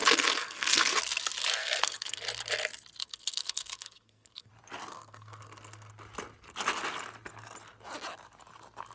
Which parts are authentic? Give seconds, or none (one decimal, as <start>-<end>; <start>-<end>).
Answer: 1.0-1.6; 2.2-3.0; 4.5-4.9; 5.9-8.9